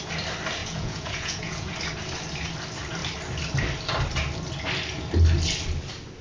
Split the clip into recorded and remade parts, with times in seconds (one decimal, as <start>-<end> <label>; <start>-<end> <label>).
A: 0.0-0.6 recorded; 0.6-1.7 remade; 1.7-6.2 recorded